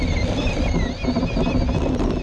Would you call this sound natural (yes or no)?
yes